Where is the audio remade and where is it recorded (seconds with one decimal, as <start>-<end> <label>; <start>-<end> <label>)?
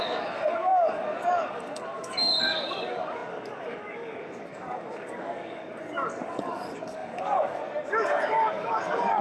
0.0-9.2 remade